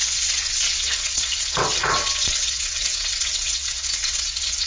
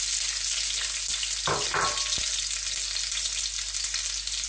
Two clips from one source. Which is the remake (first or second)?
first